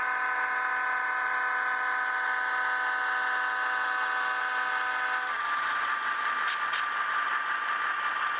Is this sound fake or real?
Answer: real